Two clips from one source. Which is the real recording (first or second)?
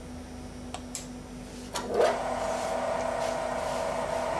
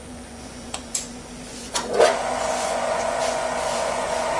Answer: first